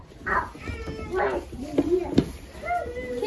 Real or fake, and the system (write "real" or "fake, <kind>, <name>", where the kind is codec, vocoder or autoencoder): real